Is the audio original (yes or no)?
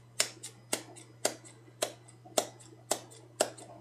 yes